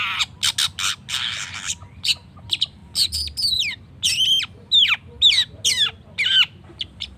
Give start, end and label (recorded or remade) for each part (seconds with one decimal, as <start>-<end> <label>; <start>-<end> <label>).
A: 0.0-7.2 recorded